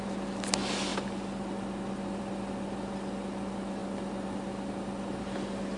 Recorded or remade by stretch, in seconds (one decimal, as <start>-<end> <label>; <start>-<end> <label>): 0.0-3.8 recorded; 3.8-5.2 remade; 5.2-5.8 recorded